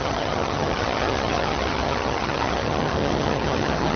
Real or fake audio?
fake